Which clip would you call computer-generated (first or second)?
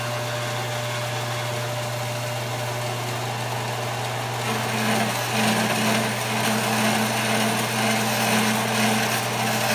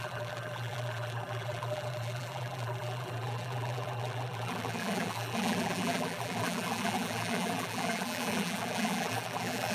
second